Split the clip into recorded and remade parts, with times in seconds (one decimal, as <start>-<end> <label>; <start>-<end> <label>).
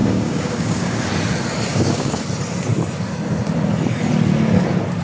0.0-1.0 remade; 1.0-1.7 recorded; 1.7-2.2 remade; 2.2-5.0 recorded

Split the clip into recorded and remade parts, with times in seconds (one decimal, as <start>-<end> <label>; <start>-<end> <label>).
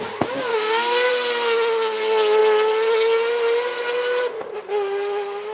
0.0-0.5 recorded; 0.5-1.1 remade; 1.1-5.5 recorded